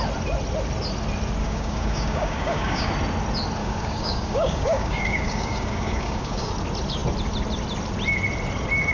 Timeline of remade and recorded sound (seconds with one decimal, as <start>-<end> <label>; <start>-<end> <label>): 0.0-1.4 recorded; 1.4-2.9 remade; 2.9-3.6 recorded; 3.6-6.5 remade; 6.5-8.9 recorded